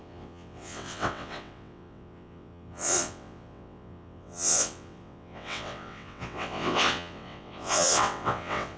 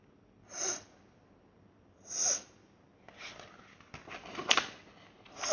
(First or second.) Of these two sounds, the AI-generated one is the first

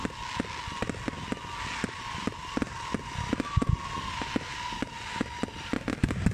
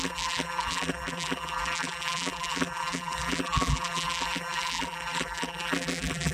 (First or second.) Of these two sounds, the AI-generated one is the second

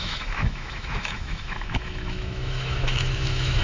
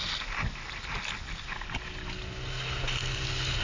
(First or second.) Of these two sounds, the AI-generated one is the first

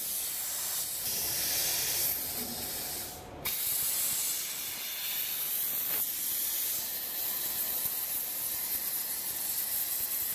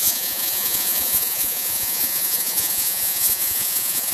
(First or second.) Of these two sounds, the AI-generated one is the second